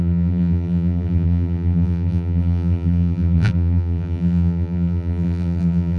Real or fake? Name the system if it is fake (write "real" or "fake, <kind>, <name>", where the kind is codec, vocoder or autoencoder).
fake, vocoder, BigVGAN v2